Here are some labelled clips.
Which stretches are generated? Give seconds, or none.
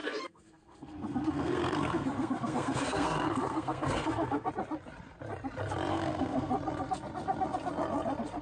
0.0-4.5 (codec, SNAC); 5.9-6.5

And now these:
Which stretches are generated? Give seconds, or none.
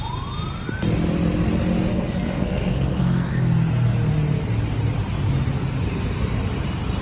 1.9-3.3 (codec, SNAC)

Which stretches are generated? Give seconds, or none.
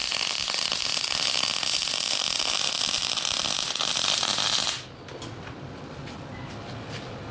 none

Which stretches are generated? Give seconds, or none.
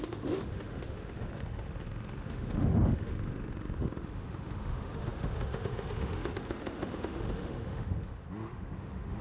0.0-9.2 (autoencoder, DAC-VAE)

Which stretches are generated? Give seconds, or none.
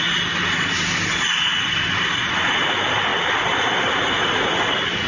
none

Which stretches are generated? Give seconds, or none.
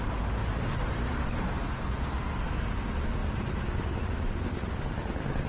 0.4-1.7 (vocoder, BigVGAN v2)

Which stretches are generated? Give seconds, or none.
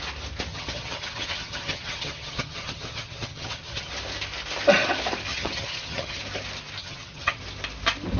0.5-3.9 (vocoder, HiFi-GAN); 5.3-6.2; 6.8-7.4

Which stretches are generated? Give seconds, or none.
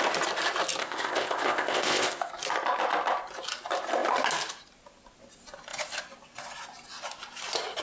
0.8-2.3 (codec, ZipCodec)